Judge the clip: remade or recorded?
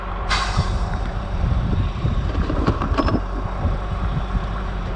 remade